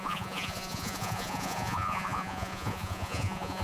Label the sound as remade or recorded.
remade